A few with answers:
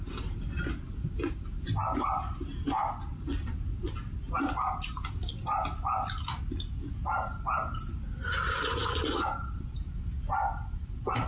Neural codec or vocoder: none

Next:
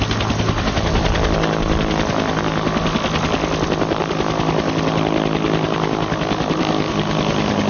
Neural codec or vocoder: none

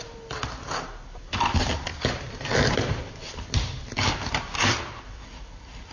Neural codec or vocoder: none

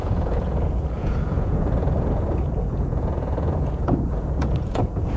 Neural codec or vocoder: vocoder, Vocos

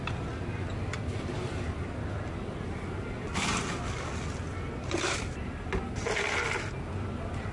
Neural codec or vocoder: none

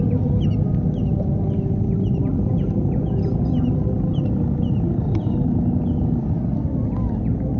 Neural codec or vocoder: none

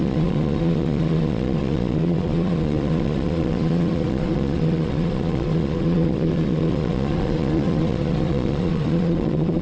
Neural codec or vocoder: vocoder, Vocos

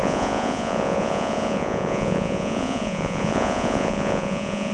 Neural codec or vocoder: vocoder, Vocos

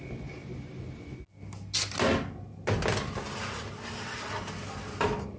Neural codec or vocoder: none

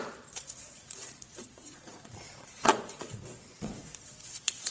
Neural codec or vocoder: vocoder, Vocos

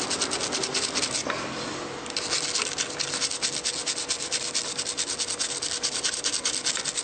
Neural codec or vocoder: none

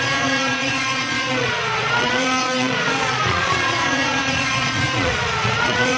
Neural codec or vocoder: vocoder, Vocos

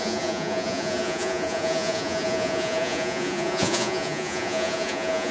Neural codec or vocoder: vocoder, Vocos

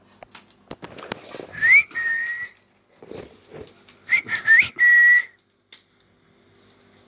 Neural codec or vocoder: none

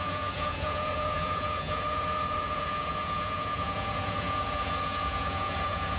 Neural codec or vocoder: vocoder, Vocos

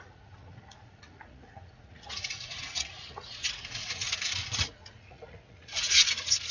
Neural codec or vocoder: vocoder, Vocos